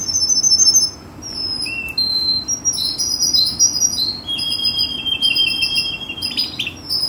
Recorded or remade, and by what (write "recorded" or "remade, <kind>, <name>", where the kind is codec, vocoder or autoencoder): recorded